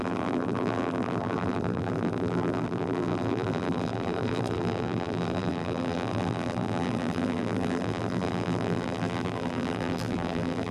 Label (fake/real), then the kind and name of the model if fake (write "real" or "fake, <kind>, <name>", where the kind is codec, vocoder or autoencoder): fake, vocoder, BigVGAN v2